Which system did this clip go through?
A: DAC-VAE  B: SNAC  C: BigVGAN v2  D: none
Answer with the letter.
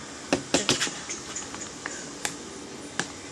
D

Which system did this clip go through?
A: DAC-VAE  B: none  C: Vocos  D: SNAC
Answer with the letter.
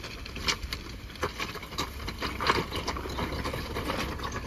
B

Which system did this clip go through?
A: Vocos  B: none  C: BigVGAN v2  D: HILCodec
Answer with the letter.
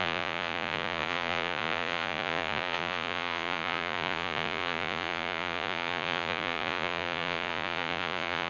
A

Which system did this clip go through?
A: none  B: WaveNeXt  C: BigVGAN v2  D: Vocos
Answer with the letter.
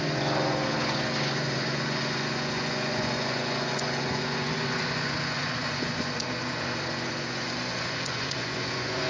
D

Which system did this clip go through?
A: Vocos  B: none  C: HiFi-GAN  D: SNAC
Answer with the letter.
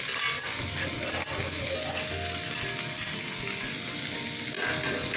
B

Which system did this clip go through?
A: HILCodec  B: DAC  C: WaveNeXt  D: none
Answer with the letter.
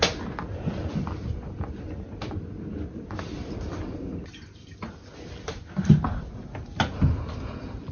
D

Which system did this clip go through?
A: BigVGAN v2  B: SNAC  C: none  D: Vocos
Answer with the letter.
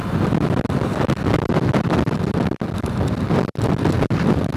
C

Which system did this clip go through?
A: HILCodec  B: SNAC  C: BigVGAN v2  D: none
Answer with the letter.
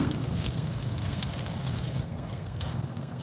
B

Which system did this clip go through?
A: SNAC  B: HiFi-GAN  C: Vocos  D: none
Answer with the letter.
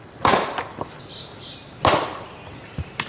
D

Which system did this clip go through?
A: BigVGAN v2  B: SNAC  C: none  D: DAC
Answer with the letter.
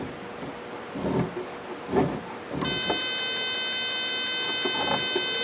C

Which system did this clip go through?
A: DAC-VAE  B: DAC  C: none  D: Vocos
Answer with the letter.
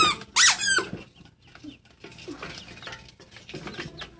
C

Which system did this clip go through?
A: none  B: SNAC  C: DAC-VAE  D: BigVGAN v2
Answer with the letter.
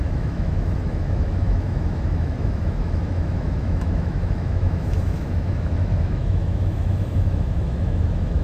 C